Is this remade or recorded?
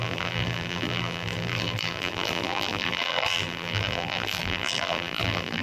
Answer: remade